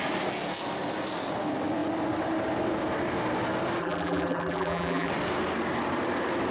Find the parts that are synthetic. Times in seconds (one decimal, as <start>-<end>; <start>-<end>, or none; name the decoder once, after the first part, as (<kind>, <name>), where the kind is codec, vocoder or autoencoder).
3.8-5.1 (vocoder, BigVGAN v2)